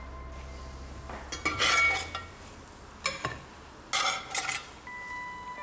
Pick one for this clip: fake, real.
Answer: real